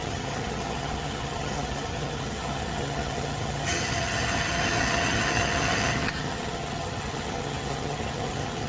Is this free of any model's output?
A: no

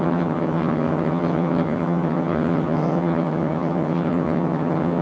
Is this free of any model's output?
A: no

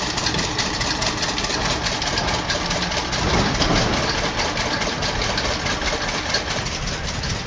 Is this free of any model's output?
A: yes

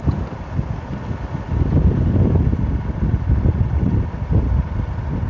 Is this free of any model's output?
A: yes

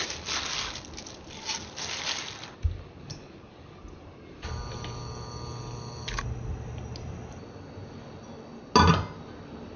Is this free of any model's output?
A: yes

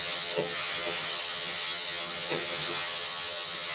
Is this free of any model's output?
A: no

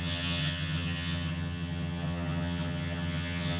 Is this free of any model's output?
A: no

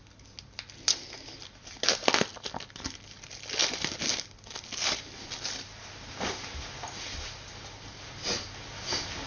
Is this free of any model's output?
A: yes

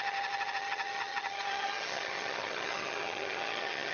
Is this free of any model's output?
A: no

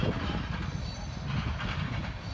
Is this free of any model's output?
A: yes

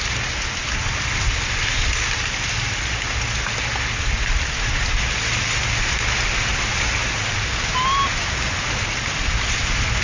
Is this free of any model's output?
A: yes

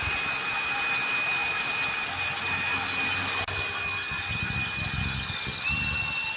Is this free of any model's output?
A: yes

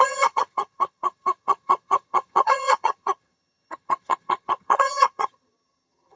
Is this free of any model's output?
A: no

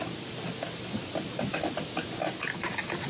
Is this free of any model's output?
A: yes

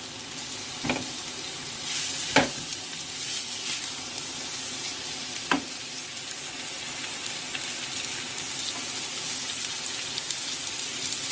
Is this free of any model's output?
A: yes